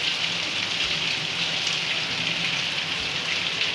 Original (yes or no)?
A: yes